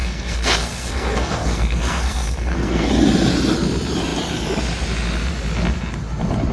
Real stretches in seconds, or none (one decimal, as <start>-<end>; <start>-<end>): 2.9-6.5